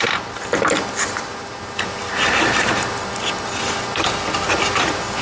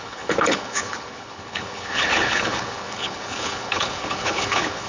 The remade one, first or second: second